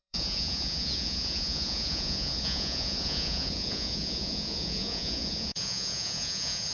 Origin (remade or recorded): remade